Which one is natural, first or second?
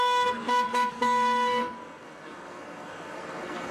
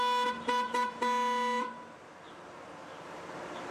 second